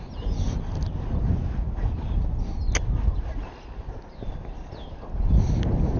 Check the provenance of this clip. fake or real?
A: real